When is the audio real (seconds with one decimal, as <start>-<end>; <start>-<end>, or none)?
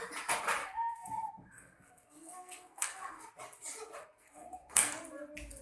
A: 0.0-0.6; 3.3-4.0; 4.9-5.6